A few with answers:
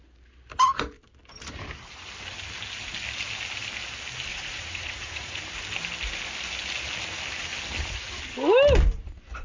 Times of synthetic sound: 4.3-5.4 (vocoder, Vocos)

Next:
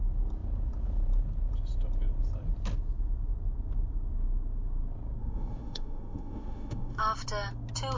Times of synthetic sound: 5.2-7.0 (autoencoder, DAC-VAE)

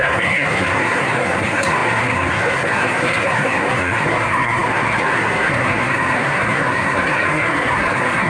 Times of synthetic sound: 0.0-8.3 (codec, SNAC)

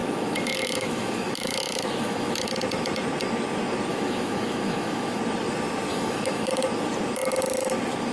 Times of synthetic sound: 0.0-2.5 (autoencoder, DAC-VAE); 3.9-5.2; 5.9-6.5

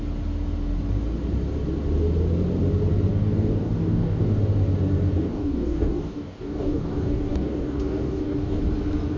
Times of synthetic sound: 3.1-4.2 (codec, DAC); 5.2-8.6